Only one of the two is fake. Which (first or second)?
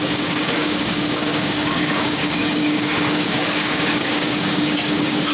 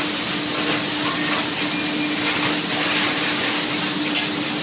first